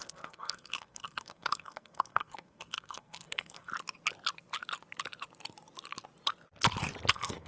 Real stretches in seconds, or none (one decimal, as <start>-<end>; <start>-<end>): 3.7-7.1